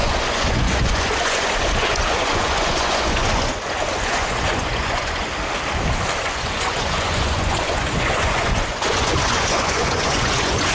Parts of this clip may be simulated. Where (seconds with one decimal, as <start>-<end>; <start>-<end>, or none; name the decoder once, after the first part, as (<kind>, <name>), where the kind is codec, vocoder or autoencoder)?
0.0-5.3 (vocoder, Vocos); 6.2-10.7

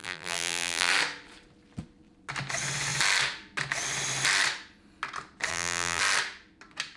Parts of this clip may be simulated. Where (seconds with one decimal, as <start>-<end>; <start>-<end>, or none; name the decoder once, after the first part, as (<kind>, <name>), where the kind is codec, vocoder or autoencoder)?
0.0-0.9 (vocoder, BigVGAN v2); 5.5-6.0

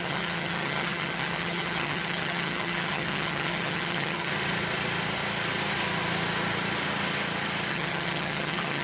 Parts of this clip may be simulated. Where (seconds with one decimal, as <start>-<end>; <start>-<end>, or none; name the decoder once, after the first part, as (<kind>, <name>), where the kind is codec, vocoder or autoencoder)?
0.0-4.3 (vocoder, HiFi-GAN); 7.7-8.8

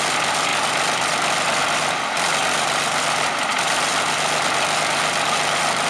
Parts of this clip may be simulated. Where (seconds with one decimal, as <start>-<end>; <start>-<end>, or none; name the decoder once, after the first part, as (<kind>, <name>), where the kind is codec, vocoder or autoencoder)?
none